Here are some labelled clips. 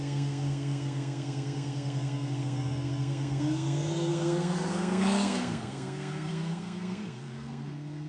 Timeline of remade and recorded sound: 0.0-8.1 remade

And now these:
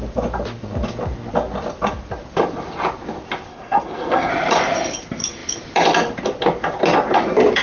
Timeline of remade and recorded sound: 0.0-3.5 recorded; 3.5-4.3 remade; 4.3-7.6 recorded